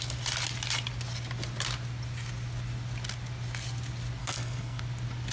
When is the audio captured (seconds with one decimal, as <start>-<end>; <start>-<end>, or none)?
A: 0.0-4.2; 4.8-5.3